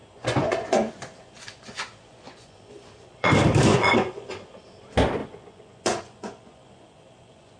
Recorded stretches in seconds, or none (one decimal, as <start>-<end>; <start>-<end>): 3.3-3.7; 4.3-5.2